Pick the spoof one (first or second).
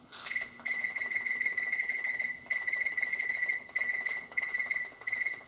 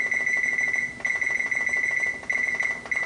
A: first